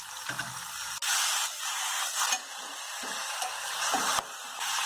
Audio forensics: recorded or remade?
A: recorded